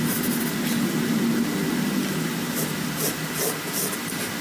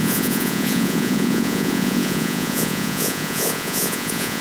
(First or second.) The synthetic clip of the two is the second